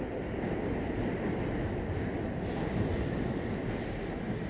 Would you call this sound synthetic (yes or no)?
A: no